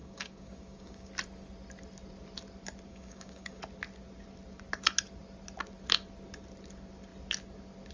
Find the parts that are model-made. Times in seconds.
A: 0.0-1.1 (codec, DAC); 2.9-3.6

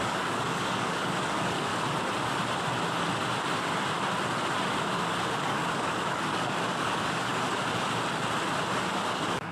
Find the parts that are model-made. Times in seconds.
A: 0.0-1.7 (codec, DAC); 4.9-7.3; 9.1-9.5

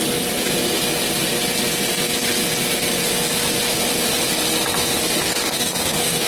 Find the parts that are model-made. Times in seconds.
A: 5.3-6.3 (codec, DAC)

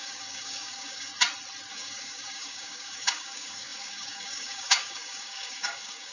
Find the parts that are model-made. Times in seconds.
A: 0.0-1.1 (codec, DAC); 1.7-6.1